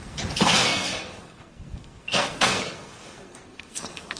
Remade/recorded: remade